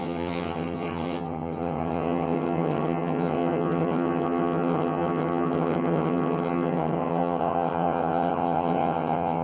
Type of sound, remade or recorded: remade